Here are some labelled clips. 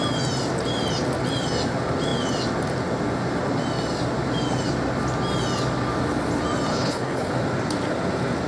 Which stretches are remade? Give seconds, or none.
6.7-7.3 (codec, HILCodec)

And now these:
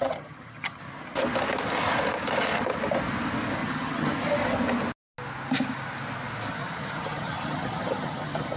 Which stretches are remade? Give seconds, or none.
0.0-0.8 (vocoder, HiFi-GAN); 3.6-4.1; 6.5-8.6

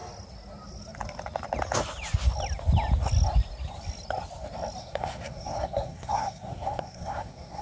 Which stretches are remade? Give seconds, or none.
4.8-7.6 (codec, SNAC)

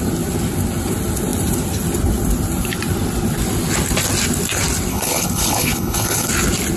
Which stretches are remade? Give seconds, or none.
4.9-6.3 (codec, HILCodec)